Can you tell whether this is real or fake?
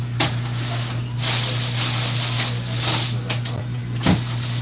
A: real